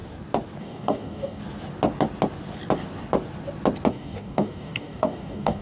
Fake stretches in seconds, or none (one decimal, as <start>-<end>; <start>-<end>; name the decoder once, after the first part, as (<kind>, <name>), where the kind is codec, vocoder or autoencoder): 0.6-1.4 (codec, DAC); 3.9-5.6